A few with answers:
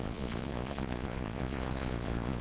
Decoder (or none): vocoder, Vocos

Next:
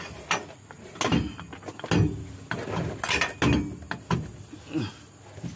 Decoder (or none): none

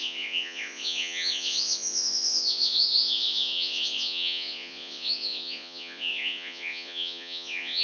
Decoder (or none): vocoder, Vocos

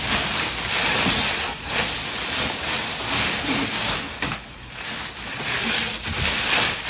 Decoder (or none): none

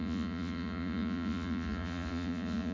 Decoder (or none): vocoder, Vocos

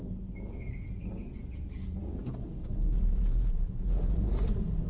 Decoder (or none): vocoder, Vocos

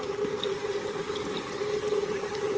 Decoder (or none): none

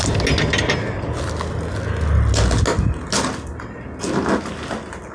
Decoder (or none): none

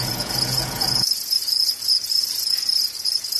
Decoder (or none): vocoder, Vocos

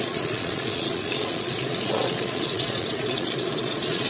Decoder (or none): vocoder, Vocos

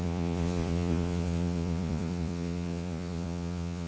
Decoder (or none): vocoder, Vocos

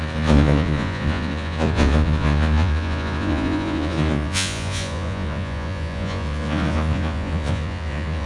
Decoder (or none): vocoder, Vocos